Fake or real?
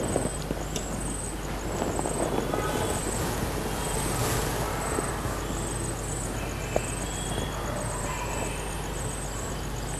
real